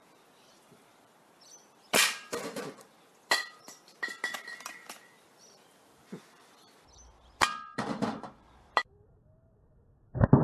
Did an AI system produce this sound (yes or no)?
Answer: yes